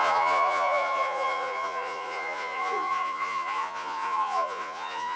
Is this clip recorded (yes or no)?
no